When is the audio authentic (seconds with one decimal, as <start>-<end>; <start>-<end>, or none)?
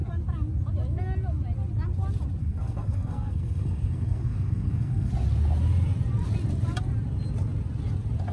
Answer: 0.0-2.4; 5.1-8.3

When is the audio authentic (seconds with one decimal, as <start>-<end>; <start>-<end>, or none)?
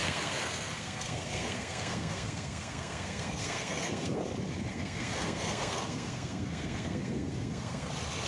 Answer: 4.2-4.7; 7.9-8.3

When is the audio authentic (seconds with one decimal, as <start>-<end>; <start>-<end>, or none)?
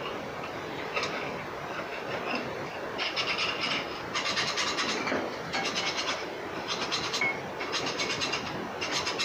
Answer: 0.0-6.1; 7.4-9.2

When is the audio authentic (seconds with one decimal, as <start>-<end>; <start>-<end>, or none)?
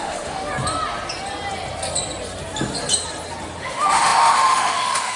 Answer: 0.5-3.6